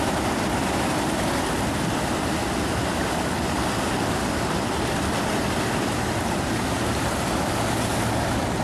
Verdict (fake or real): real